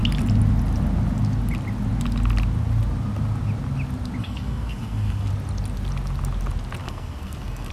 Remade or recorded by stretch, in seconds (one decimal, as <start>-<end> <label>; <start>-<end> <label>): 0.0-4.2 recorded; 4.2-5.3 remade; 5.3-6.8 recorded; 6.8-7.7 remade